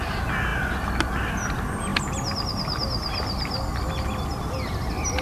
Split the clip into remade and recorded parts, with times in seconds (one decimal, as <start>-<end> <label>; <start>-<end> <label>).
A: 0.0-5.2 recorded